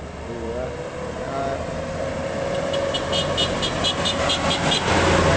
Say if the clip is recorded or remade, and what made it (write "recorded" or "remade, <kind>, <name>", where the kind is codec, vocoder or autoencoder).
recorded